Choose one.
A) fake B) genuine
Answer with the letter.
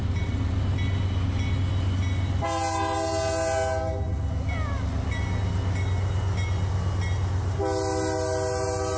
B